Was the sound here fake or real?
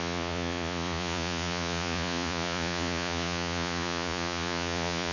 fake